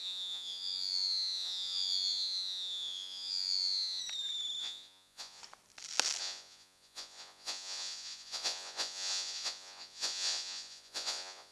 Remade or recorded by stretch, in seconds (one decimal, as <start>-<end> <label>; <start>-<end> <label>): 0.0-4.0 remade; 4.0-4.6 recorded; 4.6-5.4 remade; 5.4-6.2 recorded; 6.2-11.5 remade